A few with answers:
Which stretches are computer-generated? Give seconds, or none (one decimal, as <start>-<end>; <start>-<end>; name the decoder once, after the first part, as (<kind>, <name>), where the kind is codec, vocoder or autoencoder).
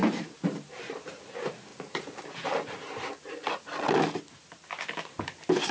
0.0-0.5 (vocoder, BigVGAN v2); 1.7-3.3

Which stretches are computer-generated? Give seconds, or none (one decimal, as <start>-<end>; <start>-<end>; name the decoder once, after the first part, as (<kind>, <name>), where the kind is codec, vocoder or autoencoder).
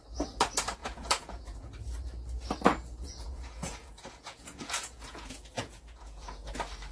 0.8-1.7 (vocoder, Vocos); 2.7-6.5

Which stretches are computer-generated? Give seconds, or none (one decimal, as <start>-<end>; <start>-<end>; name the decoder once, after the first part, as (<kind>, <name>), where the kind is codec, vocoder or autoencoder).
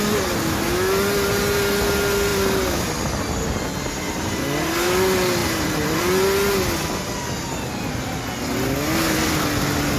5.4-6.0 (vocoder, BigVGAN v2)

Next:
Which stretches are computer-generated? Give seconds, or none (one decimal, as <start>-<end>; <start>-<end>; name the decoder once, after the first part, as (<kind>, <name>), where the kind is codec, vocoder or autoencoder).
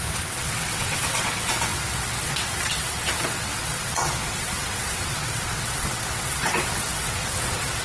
0.0-7.8 (vocoder, WaveNeXt)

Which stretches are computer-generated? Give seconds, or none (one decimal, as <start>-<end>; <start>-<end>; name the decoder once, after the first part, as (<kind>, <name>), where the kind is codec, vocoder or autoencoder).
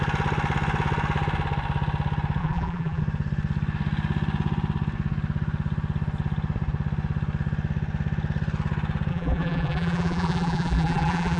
2.4-3.0 (vocoder, BigVGAN v2); 9.1-11.4